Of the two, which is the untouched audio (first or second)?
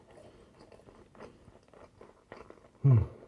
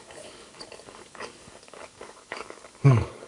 first